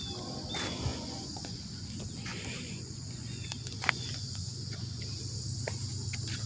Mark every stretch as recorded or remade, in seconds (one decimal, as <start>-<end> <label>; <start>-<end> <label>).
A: 0.0-0.9 recorded; 0.9-1.6 remade; 1.6-2.3 recorded; 2.3-5.0 remade; 5.0-6.5 recorded